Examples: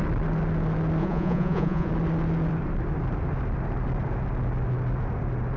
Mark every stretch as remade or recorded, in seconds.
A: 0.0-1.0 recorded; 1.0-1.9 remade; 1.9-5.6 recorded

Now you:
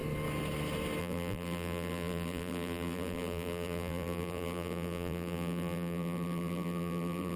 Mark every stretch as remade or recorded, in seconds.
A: 0.0-1.0 recorded; 1.0-7.4 remade

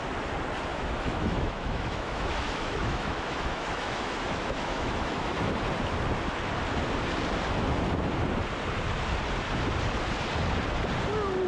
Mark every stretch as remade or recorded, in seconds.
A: 0.0-0.7 recorded; 0.7-5.5 remade; 5.5-11.5 recorded

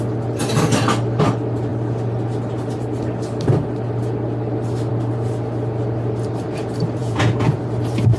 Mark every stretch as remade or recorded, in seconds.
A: 0.0-7.0 recorded; 7.0-7.6 remade; 7.6-8.2 recorded

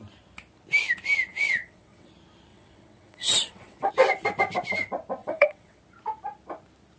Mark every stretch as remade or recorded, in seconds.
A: 0.0-1.3 recorded; 1.3-2.1 remade; 2.1-2.5 recorded; 2.5-3.9 remade; 3.9-5.2 recorded; 5.2-5.8 remade; 5.8-7.0 recorded

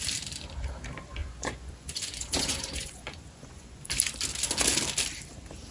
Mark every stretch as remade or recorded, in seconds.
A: 0.0-1.2 recorded; 1.2-3.9 remade; 3.9-5.7 recorded

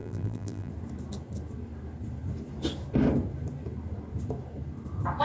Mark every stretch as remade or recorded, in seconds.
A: 0.0-0.7 remade; 0.7-5.2 recorded